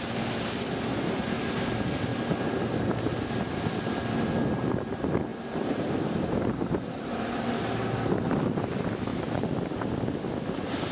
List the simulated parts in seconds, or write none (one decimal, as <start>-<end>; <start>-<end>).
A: 5.3-7.5; 9.1-10.3